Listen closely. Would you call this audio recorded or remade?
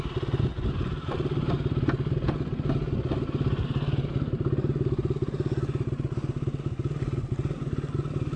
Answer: recorded